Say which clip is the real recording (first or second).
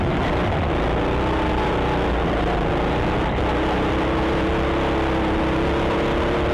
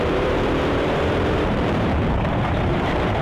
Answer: first